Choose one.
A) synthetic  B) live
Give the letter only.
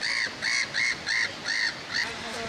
B